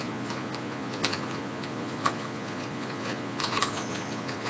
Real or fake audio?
fake